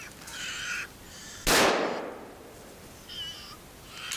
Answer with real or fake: real